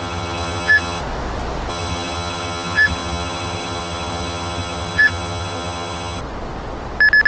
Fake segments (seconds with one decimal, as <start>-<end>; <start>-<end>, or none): 0.0-1.0; 1.7-6.2